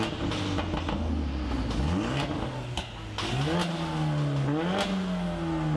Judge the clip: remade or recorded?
recorded